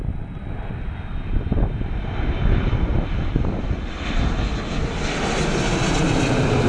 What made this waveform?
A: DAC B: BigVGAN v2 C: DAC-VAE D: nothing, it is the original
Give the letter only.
D